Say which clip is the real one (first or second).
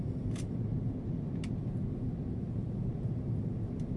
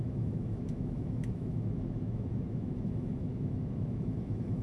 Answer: first